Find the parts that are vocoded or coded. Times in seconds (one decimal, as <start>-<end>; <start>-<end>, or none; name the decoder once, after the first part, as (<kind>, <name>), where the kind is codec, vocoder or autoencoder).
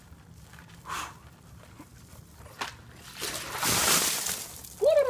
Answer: none